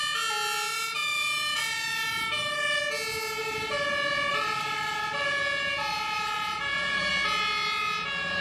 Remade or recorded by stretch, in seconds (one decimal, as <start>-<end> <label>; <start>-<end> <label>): 0.0-0.7 recorded; 0.7-2.8 remade; 2.8-3.4 recorded; 3.4-3.9 remade; 3.9-4.3 recorded; 4.3-7.1 remade; 7.1-8.4 recorded